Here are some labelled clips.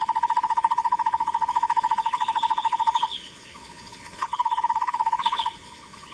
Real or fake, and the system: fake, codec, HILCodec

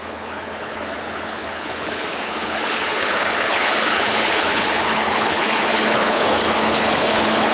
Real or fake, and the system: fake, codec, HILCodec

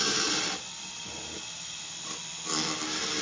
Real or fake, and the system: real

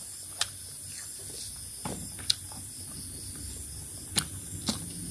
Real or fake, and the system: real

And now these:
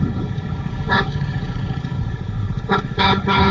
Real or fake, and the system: fake, codec, HILCodec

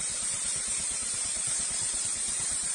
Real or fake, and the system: real